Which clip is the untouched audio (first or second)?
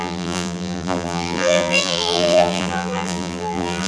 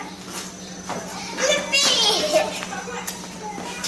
second